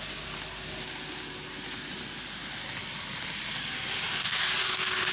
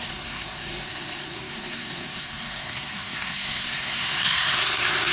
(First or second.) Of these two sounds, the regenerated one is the second